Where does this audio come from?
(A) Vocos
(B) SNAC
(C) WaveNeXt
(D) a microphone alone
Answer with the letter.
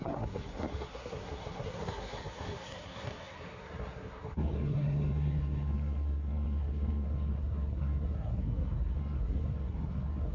B